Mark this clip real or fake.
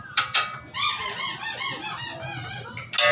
real